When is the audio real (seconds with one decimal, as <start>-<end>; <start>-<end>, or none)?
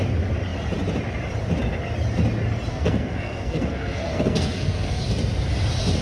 0.0-2.7; 5.0-6.0